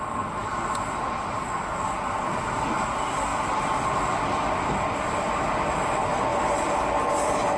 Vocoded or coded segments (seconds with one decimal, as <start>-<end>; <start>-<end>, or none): none